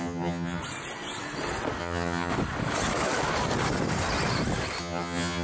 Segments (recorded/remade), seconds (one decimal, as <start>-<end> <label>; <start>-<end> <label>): 0.0-0.6 remade; 0.6-1.8 recorded; 1.8-2.3 remade; 2.3-4.8 recorded; 4.8-5.4 remade